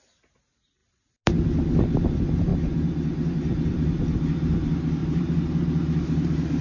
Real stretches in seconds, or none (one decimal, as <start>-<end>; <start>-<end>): 0.0-5.0; 5.5-6.6